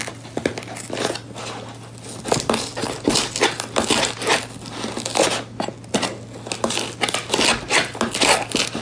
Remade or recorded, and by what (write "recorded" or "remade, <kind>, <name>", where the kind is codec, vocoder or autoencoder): recorded